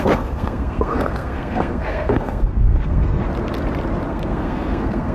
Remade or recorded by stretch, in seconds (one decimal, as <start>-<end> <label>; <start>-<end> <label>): 0.0-3.2 remade; 3.2-4.1 recorded; 4.1-5.1 remade